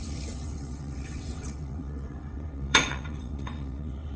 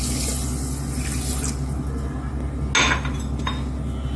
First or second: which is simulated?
first